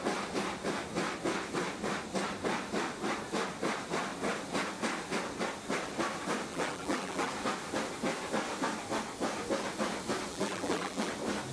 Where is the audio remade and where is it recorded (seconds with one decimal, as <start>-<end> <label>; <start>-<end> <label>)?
0.0-6.5 recorded; 6.5-7.3 remade; 7.3-10.3 recorded; 10.3-11.1 remade; 11.1-11.5 recorded